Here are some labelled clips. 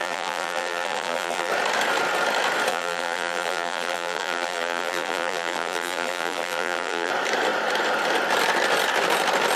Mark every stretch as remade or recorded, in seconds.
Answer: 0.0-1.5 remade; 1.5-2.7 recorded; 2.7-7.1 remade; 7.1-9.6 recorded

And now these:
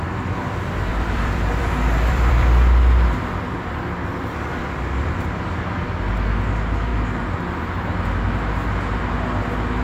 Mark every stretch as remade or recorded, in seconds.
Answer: 0.0-0.9 recorded; 0.9-5.4 remade; 5.4-9.8 recorded

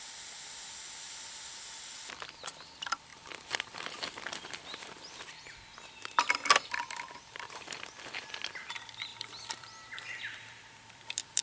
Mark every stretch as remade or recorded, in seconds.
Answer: 0.0-3.1 recorded; 3.1-4.9 remade; 4.9-9.1 recorded; 9.1-11.4 remade

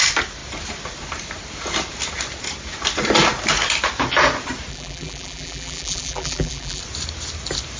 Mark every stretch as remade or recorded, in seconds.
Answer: 0.0-4.7 recorded; 4.7-6.8 remade; 6.8-7.8 recorded

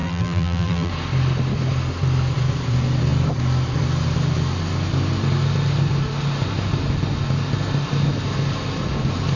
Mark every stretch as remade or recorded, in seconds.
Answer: 0.0-0.9 remade; 0.9-9.4 recorded

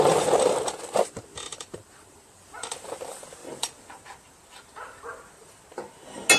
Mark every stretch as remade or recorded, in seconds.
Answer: 0.0-1.5 recorded; 1.5-2.9 remade; 2.9-3.4 recorded; 3.4-5.6 remade; 5.6-6.4 recorded

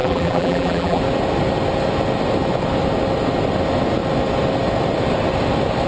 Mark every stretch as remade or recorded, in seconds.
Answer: 0.0-1.0 remade; 1.0-5.9 recorded